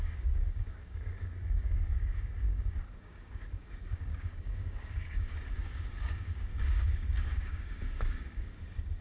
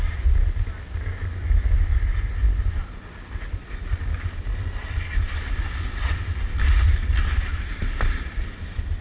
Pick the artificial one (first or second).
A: first